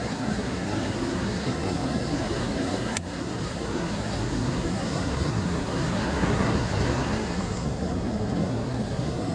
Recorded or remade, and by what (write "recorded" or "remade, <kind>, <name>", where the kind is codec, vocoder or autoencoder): remade, codec, SNAC